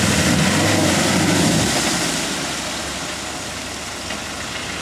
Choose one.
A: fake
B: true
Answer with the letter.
B